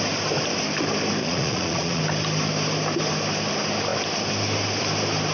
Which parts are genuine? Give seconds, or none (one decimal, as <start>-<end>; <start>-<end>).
0.0-1.2; 2.0-5.3